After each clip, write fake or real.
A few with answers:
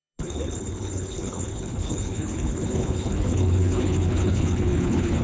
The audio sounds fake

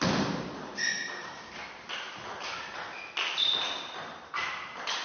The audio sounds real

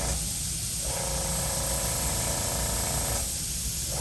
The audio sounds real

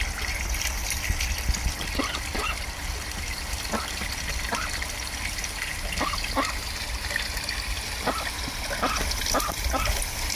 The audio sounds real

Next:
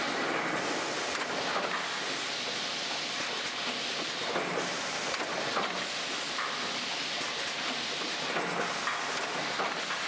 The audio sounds real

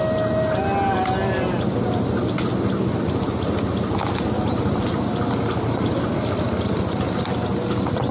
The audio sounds real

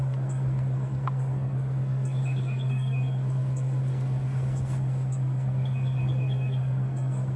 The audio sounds fake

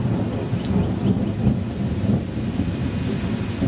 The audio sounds real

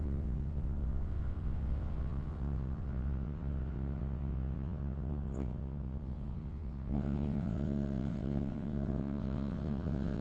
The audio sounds fake